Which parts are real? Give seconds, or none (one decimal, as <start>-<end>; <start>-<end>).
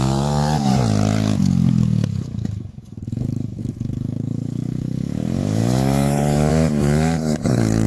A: 0.7-1.4